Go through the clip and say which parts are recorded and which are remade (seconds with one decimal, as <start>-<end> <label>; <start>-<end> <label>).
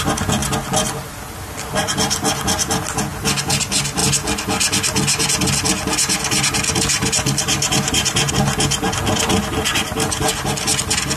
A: 0.0-11.2 recorded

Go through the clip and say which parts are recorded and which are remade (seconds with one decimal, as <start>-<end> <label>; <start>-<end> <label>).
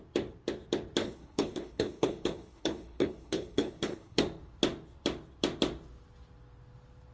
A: 0.0-1.0 recorded; 1.0-4.2 remade; 4.2-7.1 recorded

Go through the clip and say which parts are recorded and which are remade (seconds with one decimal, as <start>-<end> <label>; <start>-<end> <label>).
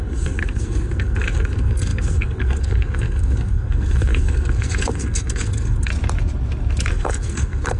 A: 0.0-5.9 remade; 5.9-6.9 recorded; 6.9-7.8 remade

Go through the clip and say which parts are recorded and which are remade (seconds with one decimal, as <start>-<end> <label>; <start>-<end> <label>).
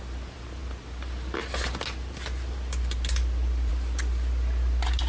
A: 0.0-5.1 recorded